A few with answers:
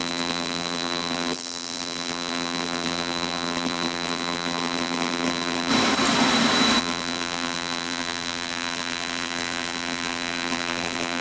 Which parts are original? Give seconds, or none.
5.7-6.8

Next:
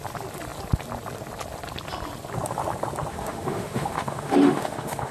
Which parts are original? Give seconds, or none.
0.0-3.1

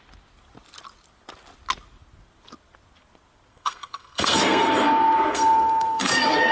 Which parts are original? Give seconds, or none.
0.0-3.5

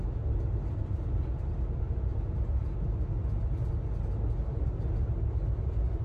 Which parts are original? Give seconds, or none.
0.0-6.0

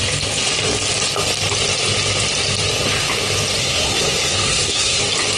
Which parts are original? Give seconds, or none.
0.0-3.6; 5.0-5.4

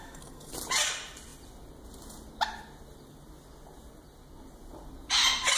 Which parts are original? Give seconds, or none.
0.5-5.6